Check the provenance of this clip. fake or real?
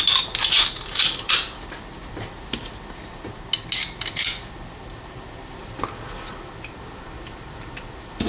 real